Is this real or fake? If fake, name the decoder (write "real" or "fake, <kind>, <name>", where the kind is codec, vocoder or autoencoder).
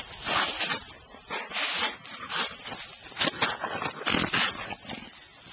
real